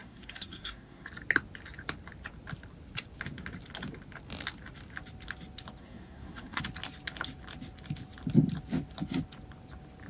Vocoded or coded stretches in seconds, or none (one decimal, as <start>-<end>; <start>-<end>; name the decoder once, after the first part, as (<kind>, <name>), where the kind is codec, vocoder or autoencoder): 0.0-1.1 (codec, SNAC); 5.8-6.6